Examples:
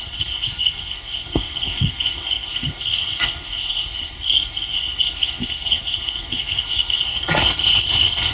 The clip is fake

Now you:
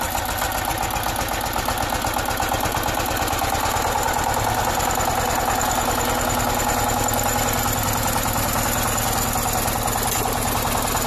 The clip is real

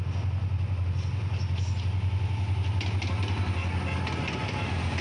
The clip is real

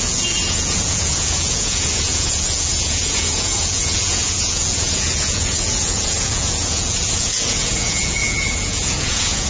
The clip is fake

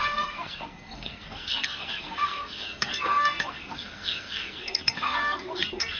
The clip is fake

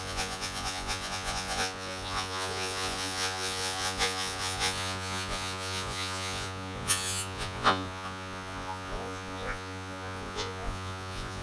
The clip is fake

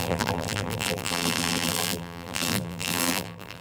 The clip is fake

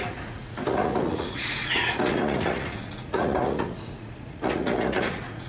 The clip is fake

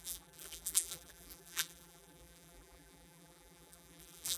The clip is fake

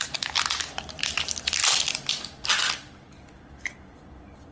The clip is real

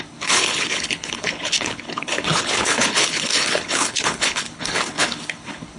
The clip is fake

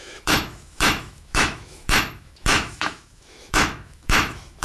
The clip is fake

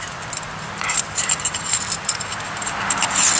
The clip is fake